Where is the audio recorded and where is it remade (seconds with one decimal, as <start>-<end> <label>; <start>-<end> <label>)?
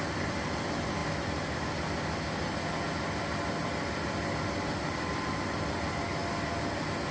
0.0-7.1 recorded